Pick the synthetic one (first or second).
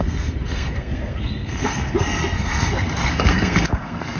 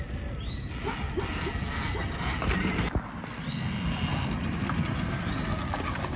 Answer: first